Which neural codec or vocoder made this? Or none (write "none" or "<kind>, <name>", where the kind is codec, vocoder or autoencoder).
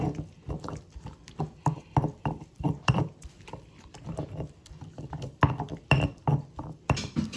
vocoder, BigVGAN v2